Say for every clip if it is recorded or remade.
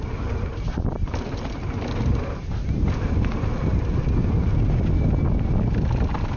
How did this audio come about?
recorded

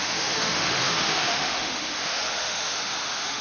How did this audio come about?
remade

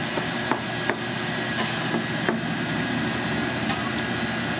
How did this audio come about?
recorded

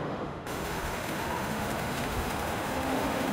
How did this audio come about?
remade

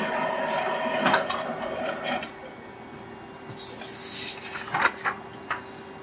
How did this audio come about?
recorded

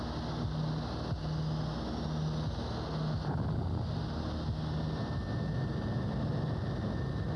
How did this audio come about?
recorded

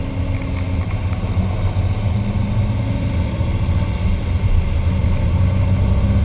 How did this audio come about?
recorded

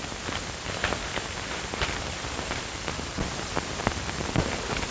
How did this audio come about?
recorded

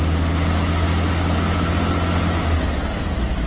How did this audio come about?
recorded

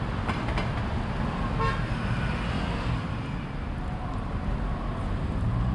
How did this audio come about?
recorded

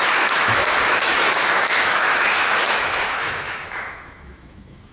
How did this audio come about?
remade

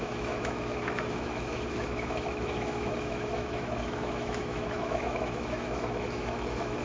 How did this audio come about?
remade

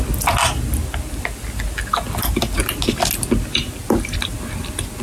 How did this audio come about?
recorded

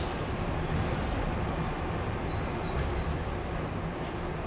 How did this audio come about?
recorded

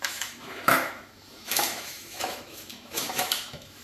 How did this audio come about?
remade